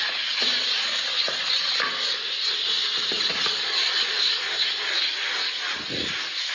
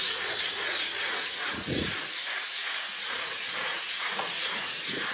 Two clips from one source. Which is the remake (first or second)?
second